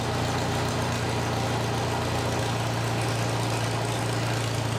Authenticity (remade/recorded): recorded